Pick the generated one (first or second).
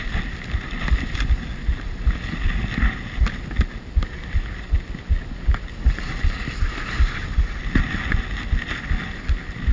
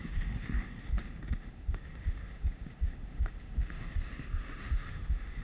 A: second